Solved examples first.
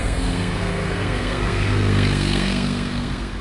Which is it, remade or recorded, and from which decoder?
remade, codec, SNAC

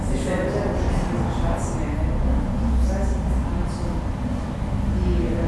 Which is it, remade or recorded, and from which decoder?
recorded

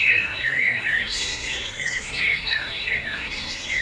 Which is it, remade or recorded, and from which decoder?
remade, codec, SNAC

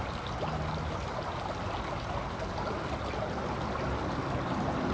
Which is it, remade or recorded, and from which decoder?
recorded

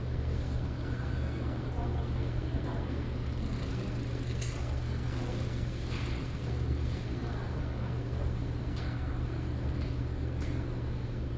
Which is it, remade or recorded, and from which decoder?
remade, codec, SNAC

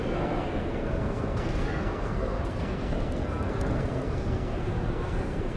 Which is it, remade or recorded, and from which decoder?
remade, codec, SNAC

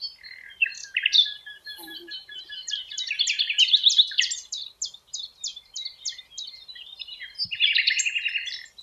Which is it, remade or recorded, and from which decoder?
recorded